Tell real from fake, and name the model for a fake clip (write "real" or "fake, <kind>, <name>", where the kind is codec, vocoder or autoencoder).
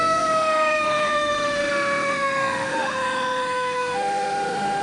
fake, autoencoder, DAC-VAE